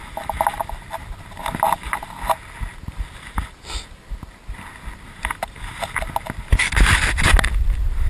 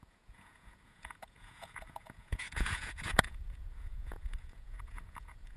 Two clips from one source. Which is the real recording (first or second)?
first